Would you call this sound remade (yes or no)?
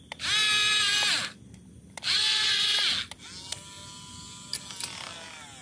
no